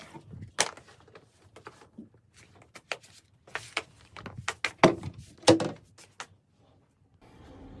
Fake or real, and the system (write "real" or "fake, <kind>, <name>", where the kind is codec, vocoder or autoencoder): real